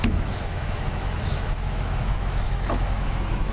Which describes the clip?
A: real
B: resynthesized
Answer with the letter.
B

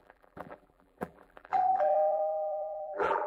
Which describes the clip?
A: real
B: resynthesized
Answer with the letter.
B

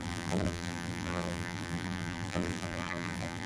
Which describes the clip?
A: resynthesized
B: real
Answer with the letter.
A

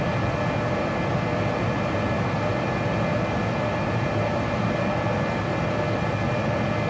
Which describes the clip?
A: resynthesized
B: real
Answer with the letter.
B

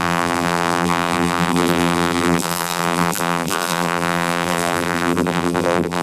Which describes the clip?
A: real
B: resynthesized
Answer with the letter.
B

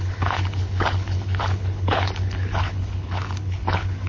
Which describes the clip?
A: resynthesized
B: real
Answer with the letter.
A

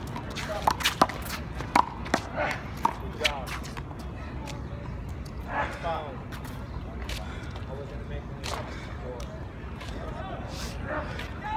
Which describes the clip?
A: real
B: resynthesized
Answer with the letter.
A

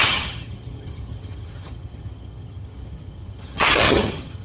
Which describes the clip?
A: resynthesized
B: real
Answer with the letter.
A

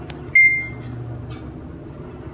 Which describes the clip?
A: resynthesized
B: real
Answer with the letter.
B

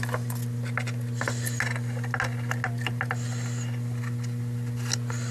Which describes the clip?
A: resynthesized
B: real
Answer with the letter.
B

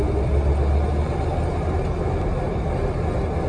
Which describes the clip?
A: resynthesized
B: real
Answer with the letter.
B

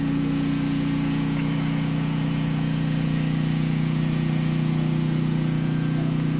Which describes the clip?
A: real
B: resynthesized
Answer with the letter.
B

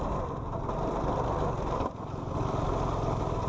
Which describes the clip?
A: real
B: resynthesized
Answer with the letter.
A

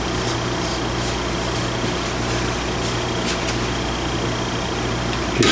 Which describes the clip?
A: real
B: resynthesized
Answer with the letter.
A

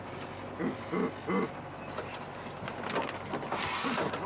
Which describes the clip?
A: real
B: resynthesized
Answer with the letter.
A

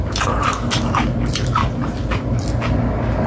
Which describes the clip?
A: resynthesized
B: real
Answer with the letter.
B